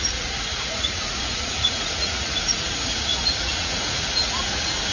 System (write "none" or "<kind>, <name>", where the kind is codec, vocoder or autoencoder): vocoder, Vocos